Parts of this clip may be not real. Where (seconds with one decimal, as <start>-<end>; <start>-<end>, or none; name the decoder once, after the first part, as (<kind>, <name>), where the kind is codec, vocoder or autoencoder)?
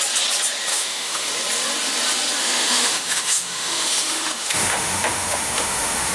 0.7-1.3 (autoencoder, DAC-VAE); 2.4-6.1